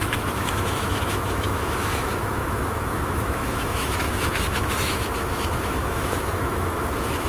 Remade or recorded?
remade